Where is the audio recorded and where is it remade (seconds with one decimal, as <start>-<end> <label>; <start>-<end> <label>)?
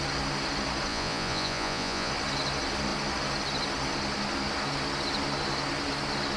0.0-0.9 recorded; 0.9-2.1 remade; 2.1-6.4 recorded